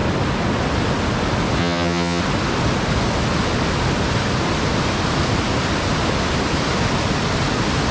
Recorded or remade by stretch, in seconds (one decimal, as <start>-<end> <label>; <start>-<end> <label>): 0.0-1.6 recorded; 1.6-2.2 remade; 2.2-7.9 recorded

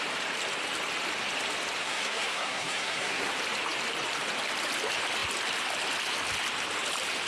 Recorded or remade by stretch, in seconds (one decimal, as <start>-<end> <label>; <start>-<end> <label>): 0.0-1.8 recorded; 1.8-3.3 remade; 3.3-7.3 recorded

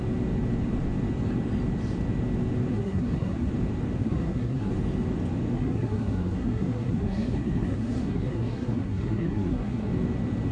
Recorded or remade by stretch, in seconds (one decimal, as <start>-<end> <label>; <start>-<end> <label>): 0.0-2.7 recorded; 2.7-3.5 remade; 3.5-4.0 recorded; 4.0-4.7 remade; 4.7-5.5 recorded; 5.5-9.9 remade; 9.9-10.5 recorded

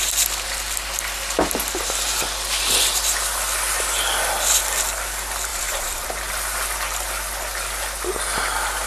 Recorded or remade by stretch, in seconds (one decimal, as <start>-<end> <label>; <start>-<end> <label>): 0.0-5.5 recorded; 5.5-6.2 remade; 6.2-8.9 recorded

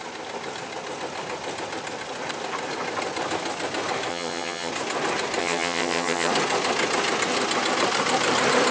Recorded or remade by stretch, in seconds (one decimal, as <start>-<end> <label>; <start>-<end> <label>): 0.0-4.1 recorded; 4.1-4.7 remade; 4.7-5.4 recorded; 5.4-6.3 remade; 6.3-8.7 recorded

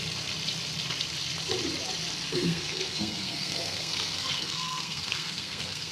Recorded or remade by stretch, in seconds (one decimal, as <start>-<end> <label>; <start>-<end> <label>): 0.0-2.3 recorded; 2.3-5.9 remade

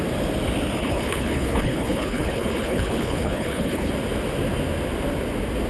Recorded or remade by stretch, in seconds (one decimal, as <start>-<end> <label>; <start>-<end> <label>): 0.0-0.8 recorded; 0.8-3.9 remade; 3.9-5.7 recorded

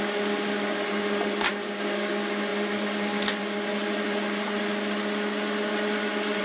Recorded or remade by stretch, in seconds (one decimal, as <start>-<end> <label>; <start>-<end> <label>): 0.0-1.5 recorded; 1.5-2.1 remade; 2.1-6.4 recorded